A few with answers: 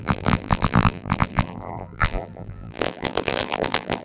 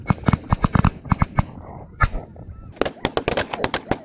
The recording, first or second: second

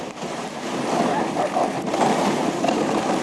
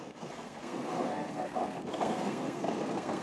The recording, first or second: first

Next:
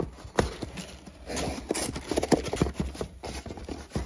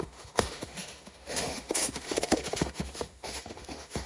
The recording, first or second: first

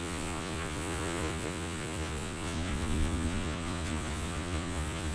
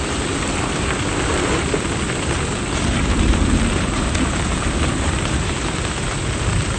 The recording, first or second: second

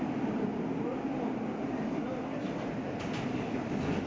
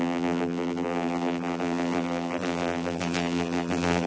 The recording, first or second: first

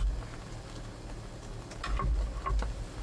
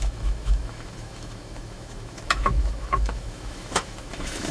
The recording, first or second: first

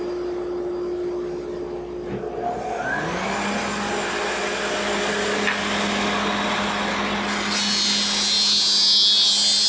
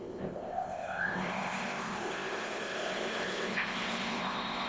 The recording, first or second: first